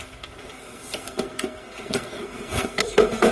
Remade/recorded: remade